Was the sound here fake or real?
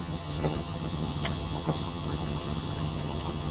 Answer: fake